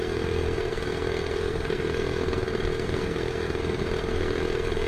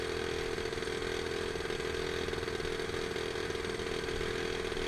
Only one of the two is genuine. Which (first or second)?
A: second